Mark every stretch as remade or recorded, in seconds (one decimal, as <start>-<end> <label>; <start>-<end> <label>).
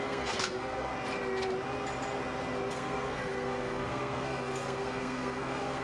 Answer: 0.0-0.9 remade; 0.9-2.7 recorded; 2.7-5.8 remade